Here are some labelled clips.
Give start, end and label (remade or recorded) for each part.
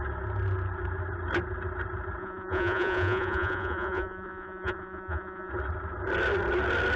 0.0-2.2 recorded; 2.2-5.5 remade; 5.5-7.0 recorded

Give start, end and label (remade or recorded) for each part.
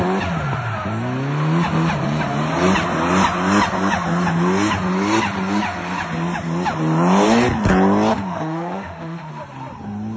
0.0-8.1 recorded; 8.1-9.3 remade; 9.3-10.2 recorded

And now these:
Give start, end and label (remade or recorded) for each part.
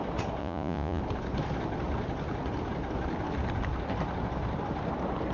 0.0-0.4 recorded; 0.4-1.0 remade; 1.0-5.3 recorded